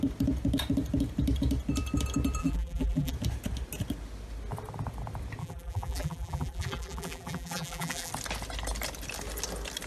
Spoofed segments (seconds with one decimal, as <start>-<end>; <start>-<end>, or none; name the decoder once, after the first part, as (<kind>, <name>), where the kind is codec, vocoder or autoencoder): 2.4-3.1 (vocoder, BigVGAN v2); 5.4-8.1